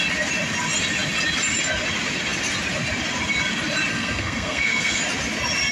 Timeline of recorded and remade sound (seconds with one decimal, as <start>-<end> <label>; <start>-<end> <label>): 0.0-3.9 recorded; 3.9-5.0 remade; 5.0-5.7 recorded